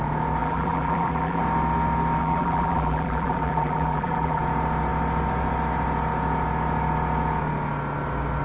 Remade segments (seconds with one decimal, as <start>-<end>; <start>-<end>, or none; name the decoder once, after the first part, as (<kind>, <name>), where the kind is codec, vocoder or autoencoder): 0.4-1.4 (vocoder, BigVGAN v2); 2.2-4.4